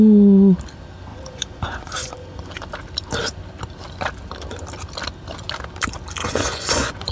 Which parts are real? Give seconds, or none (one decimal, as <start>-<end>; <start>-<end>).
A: 0.0-1.1; 2.6-6.2